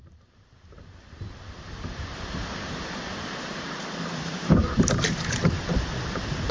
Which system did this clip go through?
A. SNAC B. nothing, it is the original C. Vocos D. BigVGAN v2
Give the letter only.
D